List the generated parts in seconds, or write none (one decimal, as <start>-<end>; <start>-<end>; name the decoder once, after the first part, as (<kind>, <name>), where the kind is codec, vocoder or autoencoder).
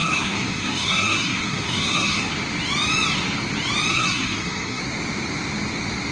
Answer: 0.0-2.3 (codec, SNAC); 3.9-4.8